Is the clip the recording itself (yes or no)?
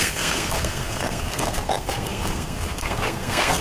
no